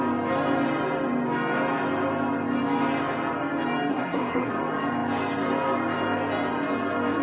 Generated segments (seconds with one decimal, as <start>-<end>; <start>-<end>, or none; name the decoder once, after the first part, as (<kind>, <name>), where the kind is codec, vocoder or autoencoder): 3.9-4.5 (codec, SNAC)